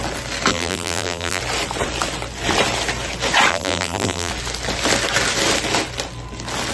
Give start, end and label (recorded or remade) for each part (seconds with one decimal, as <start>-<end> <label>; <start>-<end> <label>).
0.0-0.5 recorded; 0.5-1.4 remade; 1.4-3.5 recorded; 3.5-4.3 remade; 4.3-6.7 recorded